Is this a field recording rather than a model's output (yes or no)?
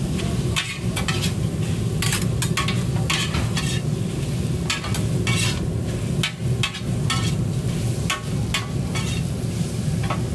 yes